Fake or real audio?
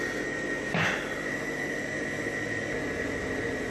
real